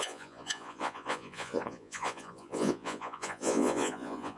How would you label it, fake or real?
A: fake